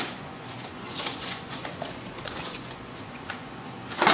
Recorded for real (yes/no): no